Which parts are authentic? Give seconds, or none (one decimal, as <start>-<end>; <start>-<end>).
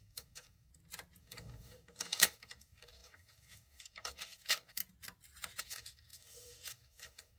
0.7-1.2; 4.8-5.6